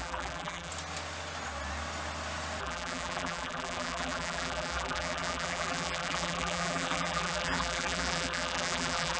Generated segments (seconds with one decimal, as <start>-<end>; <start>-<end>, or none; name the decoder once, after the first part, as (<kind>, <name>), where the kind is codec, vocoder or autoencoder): 0.0-0.7 (vocoder, BigVGAN v2); 2.6-9.2